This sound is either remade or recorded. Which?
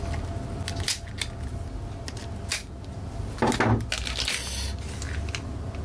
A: recorded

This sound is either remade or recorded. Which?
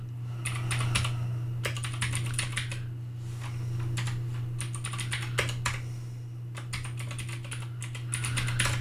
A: recorded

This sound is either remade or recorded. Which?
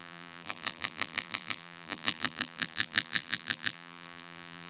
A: remade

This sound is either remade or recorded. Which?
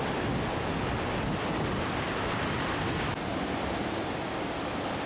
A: recorded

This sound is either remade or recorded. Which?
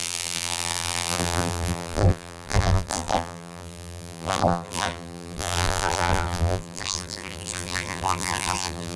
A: remade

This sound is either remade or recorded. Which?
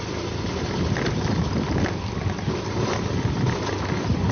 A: remade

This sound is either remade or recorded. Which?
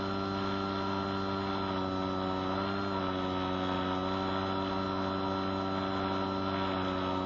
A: recorded